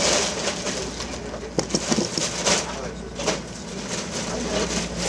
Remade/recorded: recorded